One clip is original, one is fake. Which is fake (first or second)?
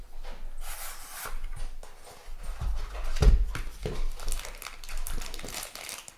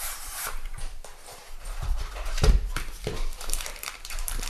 second